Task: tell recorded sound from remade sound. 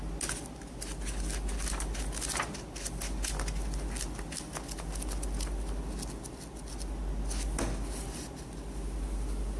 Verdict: recorded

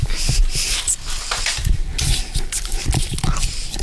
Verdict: recorded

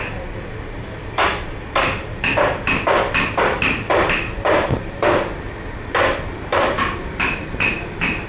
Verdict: remade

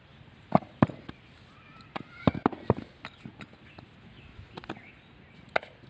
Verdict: recorded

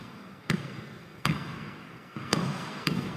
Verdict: remade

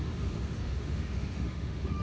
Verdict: remade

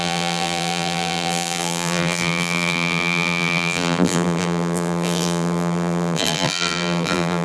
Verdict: remade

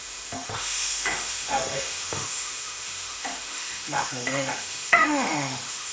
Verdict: remade